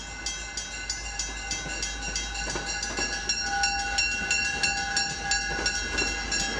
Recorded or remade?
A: recorded